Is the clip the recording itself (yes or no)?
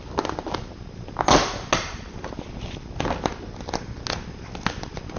yes